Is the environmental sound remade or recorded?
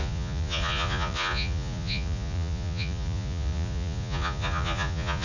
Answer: remade